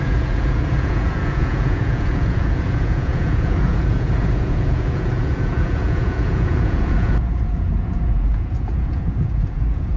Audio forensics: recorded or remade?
remade